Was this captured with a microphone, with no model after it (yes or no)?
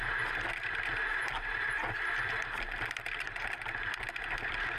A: yes